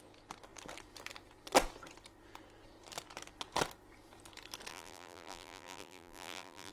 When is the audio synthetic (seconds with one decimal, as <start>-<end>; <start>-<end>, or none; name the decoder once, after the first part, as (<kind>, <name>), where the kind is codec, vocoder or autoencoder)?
4.7-6.7 (vocoder, BigVGAN v2)